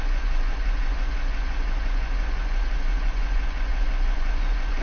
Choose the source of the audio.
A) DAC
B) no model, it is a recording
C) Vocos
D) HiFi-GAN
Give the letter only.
C